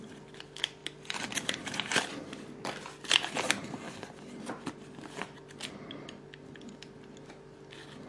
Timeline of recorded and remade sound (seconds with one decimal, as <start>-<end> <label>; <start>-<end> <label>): 0.0-8.1 recorded